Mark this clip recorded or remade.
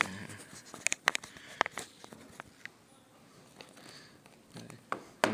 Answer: recorded